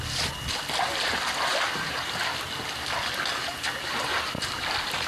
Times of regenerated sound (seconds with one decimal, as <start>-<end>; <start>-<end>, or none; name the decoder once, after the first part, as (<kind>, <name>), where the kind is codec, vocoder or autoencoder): none